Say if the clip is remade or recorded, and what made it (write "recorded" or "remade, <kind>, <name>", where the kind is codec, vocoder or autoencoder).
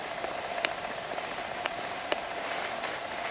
recorded